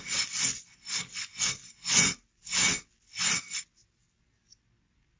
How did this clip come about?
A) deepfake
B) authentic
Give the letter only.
B